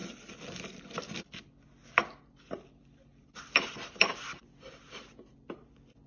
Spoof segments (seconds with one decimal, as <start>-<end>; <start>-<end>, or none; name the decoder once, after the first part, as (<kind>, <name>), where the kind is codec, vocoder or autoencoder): 0.0-6.1 (vocoder, BigVGAN v2)